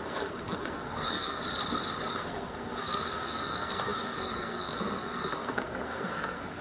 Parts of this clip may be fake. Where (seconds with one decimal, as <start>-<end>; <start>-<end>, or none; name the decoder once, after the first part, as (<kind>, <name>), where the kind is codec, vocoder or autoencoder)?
0.0-1.4 (codec, SNAC); 2.1-6.6